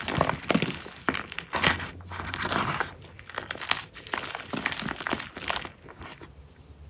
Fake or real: real